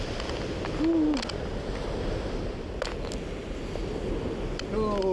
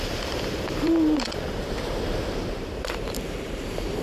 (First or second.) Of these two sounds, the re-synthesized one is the second